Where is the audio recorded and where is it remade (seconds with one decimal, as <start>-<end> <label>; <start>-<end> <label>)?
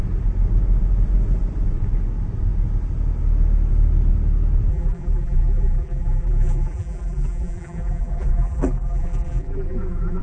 0.0-4.7 recorded; 4.7-10.2 remade